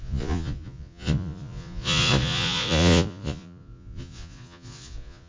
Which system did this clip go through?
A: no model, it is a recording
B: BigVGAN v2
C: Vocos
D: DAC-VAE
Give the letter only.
C